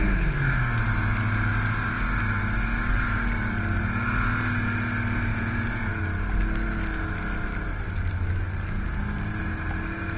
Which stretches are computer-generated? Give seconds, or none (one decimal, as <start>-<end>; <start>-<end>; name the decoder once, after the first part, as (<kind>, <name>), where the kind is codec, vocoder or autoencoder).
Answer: 5.3-5.9 (vocoder, Vocos)